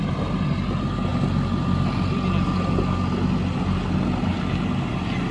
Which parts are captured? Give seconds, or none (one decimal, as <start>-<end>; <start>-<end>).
0.0-5.3